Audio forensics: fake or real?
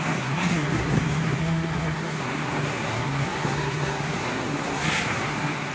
fake